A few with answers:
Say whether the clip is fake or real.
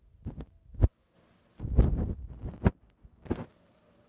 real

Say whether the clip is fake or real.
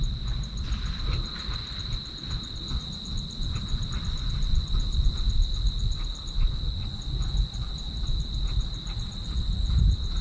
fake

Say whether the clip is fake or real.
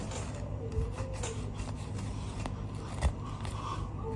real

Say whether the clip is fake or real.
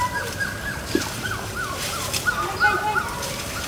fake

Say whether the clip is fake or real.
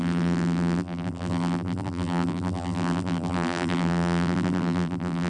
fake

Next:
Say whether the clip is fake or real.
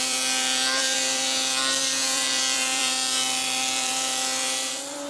fake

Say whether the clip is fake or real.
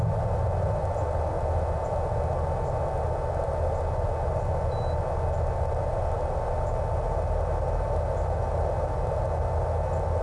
real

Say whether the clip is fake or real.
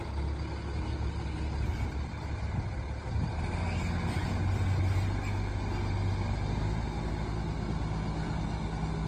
real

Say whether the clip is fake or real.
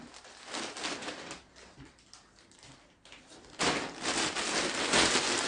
real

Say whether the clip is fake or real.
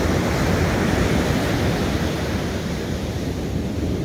real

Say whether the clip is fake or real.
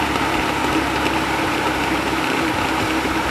fake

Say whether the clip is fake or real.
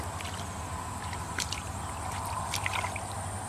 real